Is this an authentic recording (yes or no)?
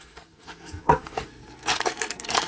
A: no